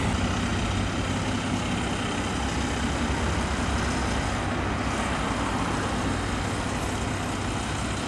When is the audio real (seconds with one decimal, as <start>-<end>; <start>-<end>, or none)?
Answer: 0.0-8.1